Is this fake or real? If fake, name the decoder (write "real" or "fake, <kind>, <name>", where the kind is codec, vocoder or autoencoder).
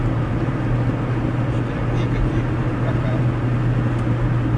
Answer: real